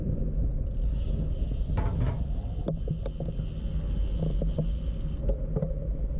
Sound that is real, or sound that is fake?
real